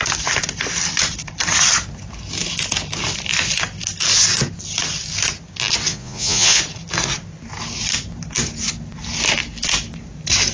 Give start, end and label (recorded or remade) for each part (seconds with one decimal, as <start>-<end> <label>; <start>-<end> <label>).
0.0-5.9 recorded; 5.9-6.6 remade; 6.6-10.5 recorded